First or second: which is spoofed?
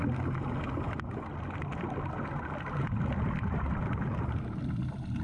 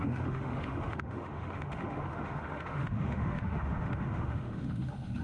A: second